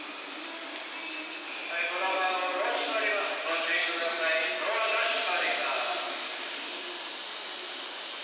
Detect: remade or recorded recorded